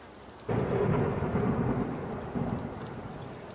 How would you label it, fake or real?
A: real